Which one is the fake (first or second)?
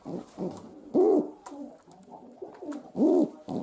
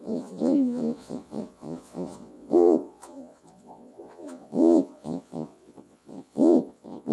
second